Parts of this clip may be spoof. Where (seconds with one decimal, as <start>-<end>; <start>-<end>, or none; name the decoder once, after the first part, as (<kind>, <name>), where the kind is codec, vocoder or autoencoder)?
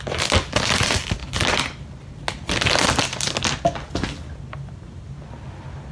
none